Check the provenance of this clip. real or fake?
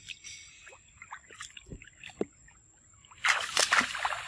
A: real